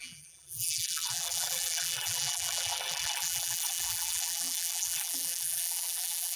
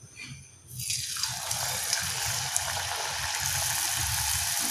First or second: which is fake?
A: first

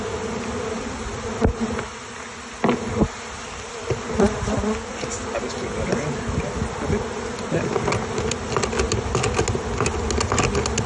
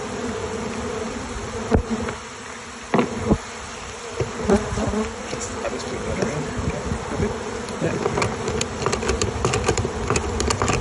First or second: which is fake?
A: second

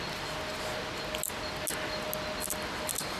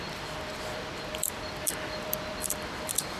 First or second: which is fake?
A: second